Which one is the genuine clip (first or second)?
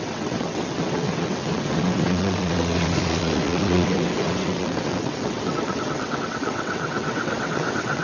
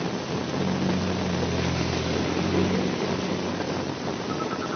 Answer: second